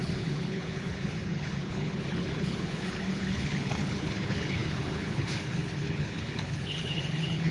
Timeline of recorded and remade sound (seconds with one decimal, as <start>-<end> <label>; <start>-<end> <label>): 0.0-7.5 remade